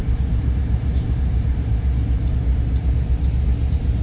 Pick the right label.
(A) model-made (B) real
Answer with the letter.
A